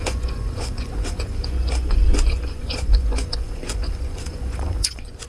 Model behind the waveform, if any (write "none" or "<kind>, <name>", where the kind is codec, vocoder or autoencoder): vocoder, Vocos